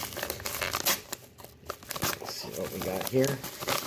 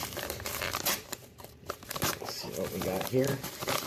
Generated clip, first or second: second